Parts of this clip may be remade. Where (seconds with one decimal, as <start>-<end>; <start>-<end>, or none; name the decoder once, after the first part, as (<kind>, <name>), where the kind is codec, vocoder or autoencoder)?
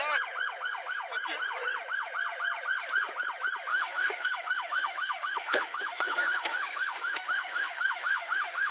3.7-8.7 (autoencoder, DAC-VAE)